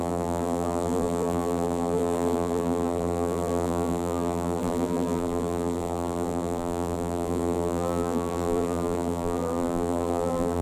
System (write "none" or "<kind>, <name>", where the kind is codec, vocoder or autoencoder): vocoder, BigVGAN v2